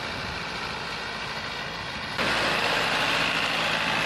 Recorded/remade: recorded